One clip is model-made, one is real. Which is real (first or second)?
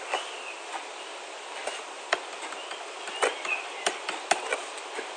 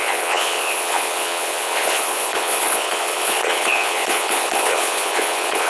first